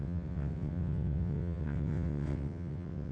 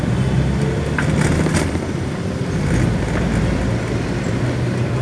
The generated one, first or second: first